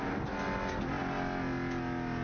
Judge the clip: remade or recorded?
recorded